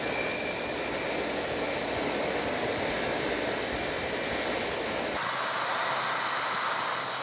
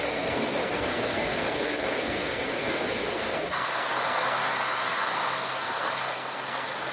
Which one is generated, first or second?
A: second